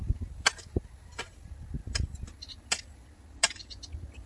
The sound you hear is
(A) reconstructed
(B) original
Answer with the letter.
B